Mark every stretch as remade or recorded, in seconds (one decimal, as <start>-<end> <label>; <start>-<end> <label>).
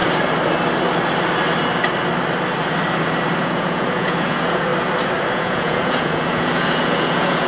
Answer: 0.0-3.4 recorded; 3.4-4.7 remade; 4.7-5.3 recorded; 5.3-7.5 remade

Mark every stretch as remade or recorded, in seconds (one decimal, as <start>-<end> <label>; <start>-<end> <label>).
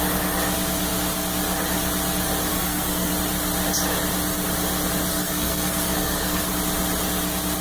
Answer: 0.0-2.5 recorded; 2.5-3.1 remade; 3.1-5.1 recorded; 5.1-6.5 remade; 6.5-7.6 recorded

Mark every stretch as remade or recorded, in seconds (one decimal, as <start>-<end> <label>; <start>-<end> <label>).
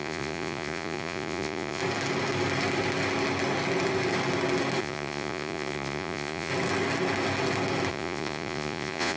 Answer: 0.0-1.8 remade; 1.8-4.8 recorded; 4.8-6.5 remade; 6.5-7.9 recorded; 7.9-9.2 remade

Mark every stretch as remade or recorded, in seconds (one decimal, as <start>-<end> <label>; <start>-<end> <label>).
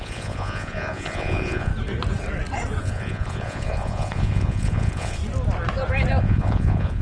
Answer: 0.0-1.7 remade; 1.7-2.8 recorded; 2.8-5.2 remade; 5.2-6.2 recorded; 6.2-7.0 remade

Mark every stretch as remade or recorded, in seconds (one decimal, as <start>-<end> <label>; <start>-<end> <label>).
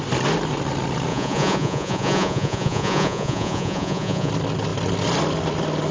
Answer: 0.0-1.1 recorded; 1.1-4.3 remade; 4.3-5.9 recorded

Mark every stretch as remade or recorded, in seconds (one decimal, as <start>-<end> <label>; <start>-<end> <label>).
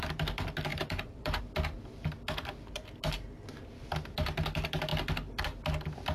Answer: 0.0-0.7 recorded; 0.7-1.4 remade; 1.4-6.1 recorded